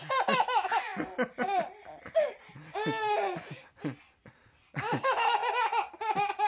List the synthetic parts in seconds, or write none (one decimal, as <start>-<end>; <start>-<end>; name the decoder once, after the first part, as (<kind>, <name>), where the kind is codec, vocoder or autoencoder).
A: 0.9-2.5 (vocoder, BigVGAN v2)